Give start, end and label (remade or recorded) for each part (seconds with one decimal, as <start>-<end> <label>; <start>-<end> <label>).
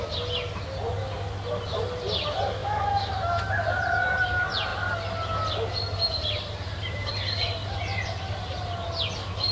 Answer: 0.0-2.6 recorded; 2.6-3.5 remade; 3.5-9.5 recorded